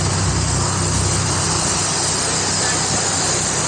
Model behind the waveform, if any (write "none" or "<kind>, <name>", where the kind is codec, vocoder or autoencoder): none